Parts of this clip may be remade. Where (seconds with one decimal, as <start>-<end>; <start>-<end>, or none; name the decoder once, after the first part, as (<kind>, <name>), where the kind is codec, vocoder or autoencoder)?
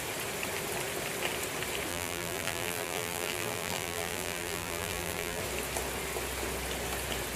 1.9-5.4 (vocoder, BigVGAN v2)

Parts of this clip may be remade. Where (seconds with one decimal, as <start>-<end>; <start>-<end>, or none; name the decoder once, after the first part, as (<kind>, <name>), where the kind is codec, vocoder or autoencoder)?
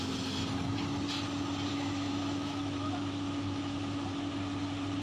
1.7-4.1 (autoencoder, DAC-VAE)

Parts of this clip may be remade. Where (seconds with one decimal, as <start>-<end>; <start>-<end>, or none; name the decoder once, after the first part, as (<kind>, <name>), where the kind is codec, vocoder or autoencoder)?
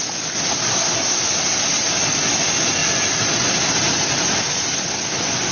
0.7-1.2 (codec, SNAC)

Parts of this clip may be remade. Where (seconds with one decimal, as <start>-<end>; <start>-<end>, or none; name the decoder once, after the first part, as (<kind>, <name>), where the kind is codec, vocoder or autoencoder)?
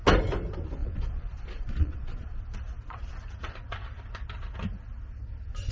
0.8-2.4 (vocoder, Vocos)